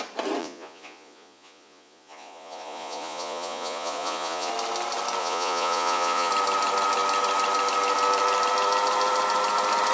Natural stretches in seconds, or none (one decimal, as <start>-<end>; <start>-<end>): 0.0-0.4; 4.5-5.2; 6.3-9.9